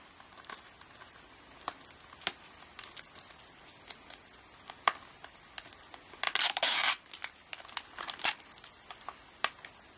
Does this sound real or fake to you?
fake